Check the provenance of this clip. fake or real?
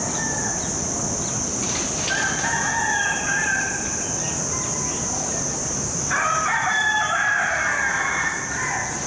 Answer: real